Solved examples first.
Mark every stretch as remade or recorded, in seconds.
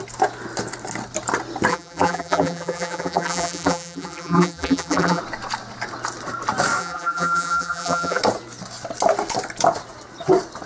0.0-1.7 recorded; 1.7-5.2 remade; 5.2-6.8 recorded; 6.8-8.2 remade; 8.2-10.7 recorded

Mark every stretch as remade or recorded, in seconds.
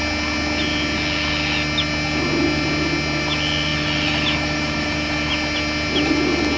0.0-3.7 recorded; 3.7-5.3 remade; 5.3-6.6 recorded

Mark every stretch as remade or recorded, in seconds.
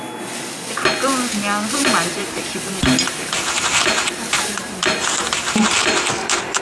0.0-2.1 recorded; 2.1-5.9 remade; 5.9-6.6 recorded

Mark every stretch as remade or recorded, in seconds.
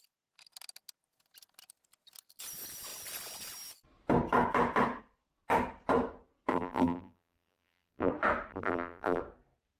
0.0-6.5 recorded; 6.5-8.1 remade; 8.1-8.5 recorded; 8.5-9.2 remade; 9.2-9.8 recorded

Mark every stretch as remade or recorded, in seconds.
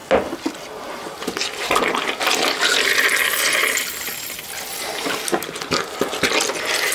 0.0-6.9 recorded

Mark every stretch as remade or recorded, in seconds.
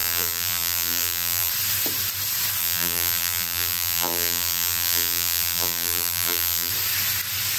0.0-1.5 remade; 1.5-2.6 recorded; 2.6-6.7 remade; 6.7-7.6 recorded